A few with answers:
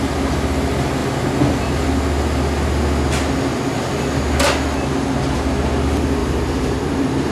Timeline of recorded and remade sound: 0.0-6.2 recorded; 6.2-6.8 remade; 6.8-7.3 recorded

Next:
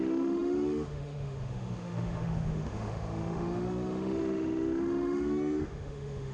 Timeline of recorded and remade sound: 0.0-6.3 remade